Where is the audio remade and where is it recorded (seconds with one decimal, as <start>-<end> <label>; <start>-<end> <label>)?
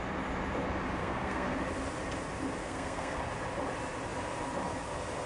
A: 0.0-1.0 recorded; 1.0-1.6 remade; 1.6-2.6 recorded; 2.6-3.2 remade; 3.2-5.3 recorded